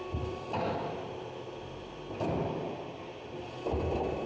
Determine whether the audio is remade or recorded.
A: remade